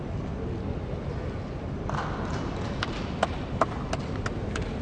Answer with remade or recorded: recorded